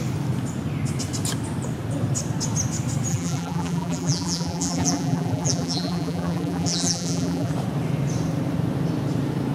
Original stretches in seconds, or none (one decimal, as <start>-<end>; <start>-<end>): 0.0-3.1; 7.5-9.5

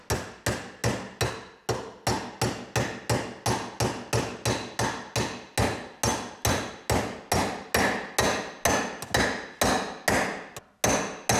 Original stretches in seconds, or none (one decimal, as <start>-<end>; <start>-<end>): 0.0-11.4

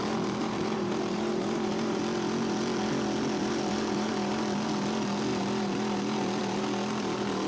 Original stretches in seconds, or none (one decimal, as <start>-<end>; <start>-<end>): 2.0-3.4; 4.1-7.5

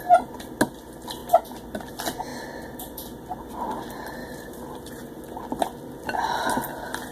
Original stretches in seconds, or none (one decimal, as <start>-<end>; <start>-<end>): 0.0-4.2; 5.4-7.1

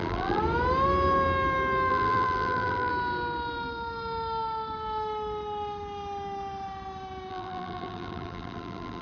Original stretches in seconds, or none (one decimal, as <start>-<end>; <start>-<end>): 0.4-1.9; 2.9-7.3

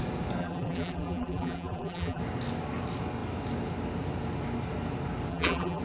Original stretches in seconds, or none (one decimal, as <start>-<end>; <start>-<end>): 0.0-0.4; 2.2-5.3

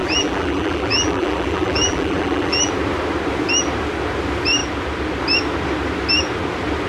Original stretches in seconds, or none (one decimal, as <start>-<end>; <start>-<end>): 2.7-6.9